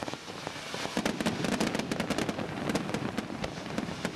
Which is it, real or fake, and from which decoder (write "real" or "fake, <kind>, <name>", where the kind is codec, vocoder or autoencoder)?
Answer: real